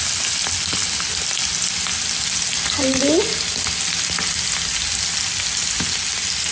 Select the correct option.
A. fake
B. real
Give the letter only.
B